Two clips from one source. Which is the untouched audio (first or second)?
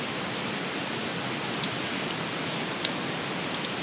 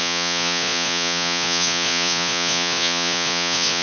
first